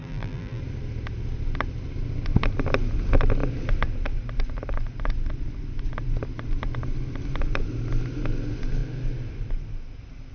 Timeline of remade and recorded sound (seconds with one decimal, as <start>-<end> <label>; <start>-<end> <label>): 0.0-0.6 remade; 0.6-10.3 recorded